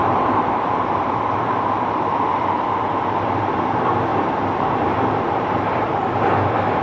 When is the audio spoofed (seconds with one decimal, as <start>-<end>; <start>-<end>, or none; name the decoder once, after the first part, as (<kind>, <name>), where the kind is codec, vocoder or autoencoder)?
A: 0.0-2.0 (vocoder, BigVGAN v2); 4.1-5.7